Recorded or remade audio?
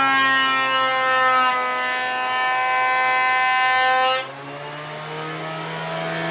recorded